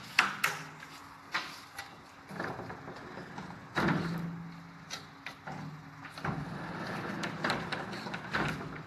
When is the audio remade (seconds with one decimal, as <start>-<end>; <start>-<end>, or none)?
none